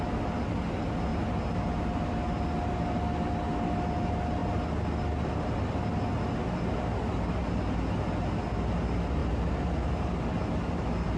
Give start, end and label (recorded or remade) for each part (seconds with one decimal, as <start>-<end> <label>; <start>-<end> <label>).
0.0-11.2 recorded